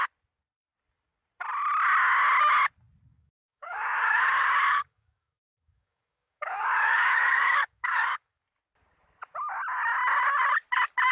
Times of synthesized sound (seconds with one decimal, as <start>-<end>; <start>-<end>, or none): 3.1-8.4